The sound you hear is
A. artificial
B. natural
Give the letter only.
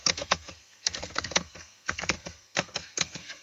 A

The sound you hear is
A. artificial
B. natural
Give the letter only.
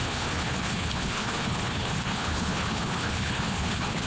A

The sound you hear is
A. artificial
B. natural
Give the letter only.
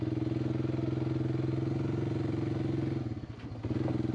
B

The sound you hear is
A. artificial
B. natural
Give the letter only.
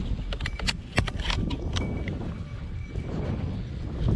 B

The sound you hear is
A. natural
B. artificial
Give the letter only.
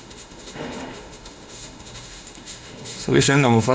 B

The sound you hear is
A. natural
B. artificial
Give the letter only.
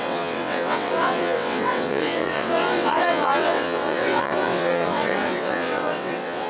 B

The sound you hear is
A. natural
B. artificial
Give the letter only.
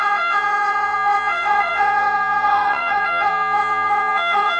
B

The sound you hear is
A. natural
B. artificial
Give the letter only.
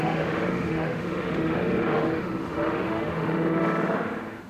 B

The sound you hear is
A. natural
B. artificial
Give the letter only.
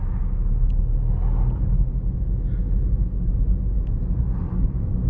A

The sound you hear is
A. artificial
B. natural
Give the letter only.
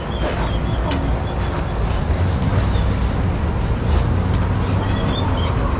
B